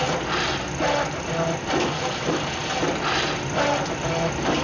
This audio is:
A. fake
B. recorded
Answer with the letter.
B